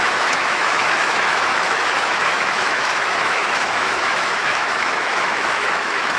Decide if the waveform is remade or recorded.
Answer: remade